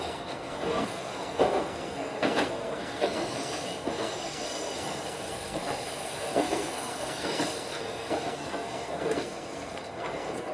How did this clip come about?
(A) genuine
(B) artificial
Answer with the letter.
B